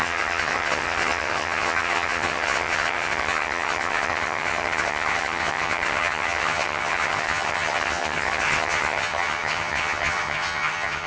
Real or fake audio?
fake